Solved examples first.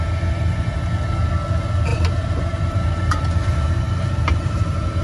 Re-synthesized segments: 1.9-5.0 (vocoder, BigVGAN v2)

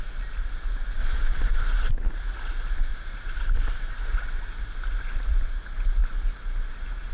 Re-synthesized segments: 1.0-1.9 (vocoder, BigVGAN v2); 2.9-3.9